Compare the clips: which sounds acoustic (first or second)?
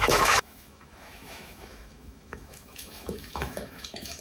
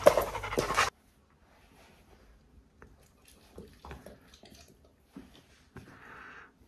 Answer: second